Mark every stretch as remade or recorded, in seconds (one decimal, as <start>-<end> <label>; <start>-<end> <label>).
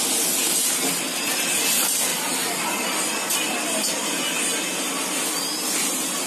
0.0-6.3 recorded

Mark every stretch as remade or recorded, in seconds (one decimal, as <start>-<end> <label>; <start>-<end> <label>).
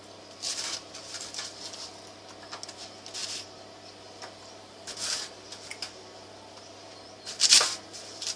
0.0-8.4 recorded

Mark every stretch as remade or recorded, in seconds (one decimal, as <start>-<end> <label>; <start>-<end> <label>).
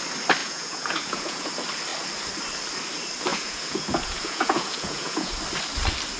0.0-0.4 recorded; 0.4-1.5 remade; 1.5-3.3 recorded; 3.3-5.3 remade; 5.3-6.2 recorded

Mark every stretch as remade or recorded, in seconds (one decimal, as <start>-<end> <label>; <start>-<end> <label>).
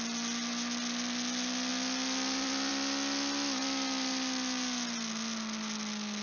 0.0-6.2 recorded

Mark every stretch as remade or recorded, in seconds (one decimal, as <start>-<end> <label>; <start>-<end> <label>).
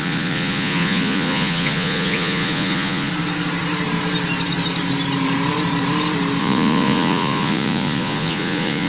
0.0-3.1 remade; 3.1-6.4 recorded; 6.4-8.9 remade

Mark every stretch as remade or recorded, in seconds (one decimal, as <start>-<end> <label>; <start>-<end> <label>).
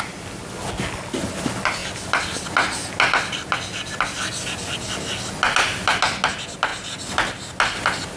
0.0-8.2 recorded